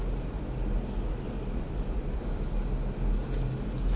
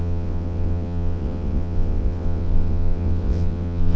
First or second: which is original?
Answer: first